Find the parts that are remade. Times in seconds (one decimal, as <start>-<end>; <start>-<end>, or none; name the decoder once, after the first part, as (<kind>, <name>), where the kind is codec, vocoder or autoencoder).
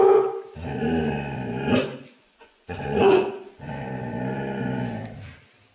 1.8-3.7 (vocoder, Vocos)